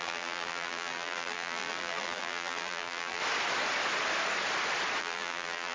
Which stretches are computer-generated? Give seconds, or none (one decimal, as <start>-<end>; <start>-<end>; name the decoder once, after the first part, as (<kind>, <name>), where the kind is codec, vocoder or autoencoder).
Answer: 0.0-3.2 (vocoder, BigVGAN v2); 5.0-5.7